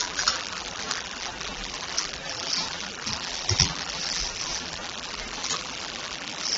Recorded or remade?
remade